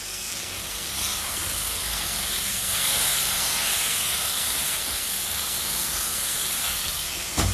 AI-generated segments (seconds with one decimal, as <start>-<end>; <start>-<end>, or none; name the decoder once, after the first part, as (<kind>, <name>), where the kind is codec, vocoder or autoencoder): 0.0-7.5 (codec, SNAC)